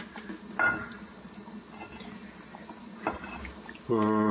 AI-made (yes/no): no